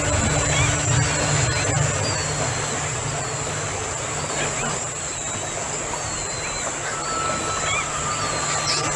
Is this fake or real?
real